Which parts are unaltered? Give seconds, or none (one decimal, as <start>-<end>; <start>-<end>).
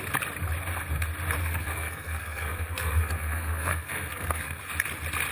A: 0.0-1.4; 4.6-5.3